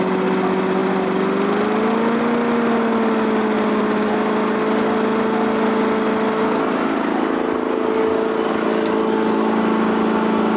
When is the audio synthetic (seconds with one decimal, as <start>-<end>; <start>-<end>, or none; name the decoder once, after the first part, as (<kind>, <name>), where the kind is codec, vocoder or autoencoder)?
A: none